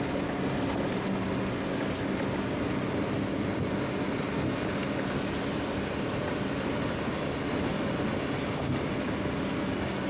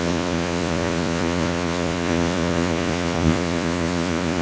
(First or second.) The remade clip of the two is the second